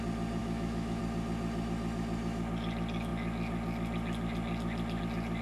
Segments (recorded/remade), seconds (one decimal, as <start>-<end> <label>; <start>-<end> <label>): 0.0-0.4 recorded; 0.4-1.0 remade; 1.0-5.4 recorded